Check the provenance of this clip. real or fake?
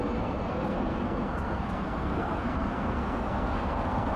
fake